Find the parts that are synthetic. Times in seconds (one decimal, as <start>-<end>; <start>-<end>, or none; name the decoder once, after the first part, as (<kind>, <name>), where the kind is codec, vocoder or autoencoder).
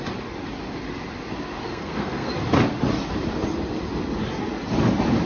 1.7-2.3 (codec, SNAC)